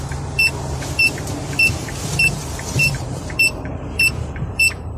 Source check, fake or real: fake